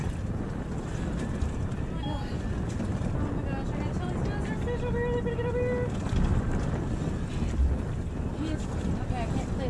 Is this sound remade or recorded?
recorded